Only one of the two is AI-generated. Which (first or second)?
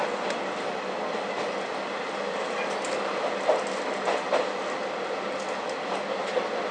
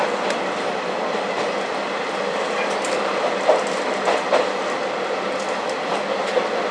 second